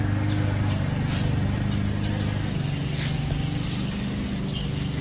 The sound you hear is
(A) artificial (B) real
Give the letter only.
B